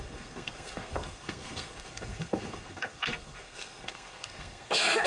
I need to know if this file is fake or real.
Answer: fake